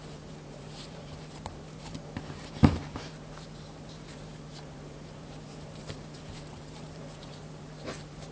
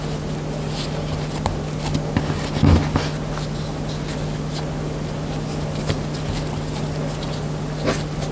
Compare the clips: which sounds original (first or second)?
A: second